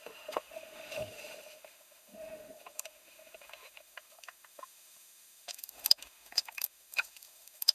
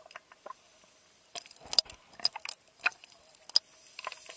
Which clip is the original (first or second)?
second